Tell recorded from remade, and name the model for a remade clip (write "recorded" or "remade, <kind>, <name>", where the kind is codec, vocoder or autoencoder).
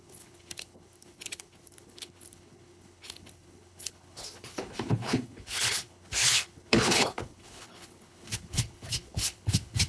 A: remade, codec, HILCodec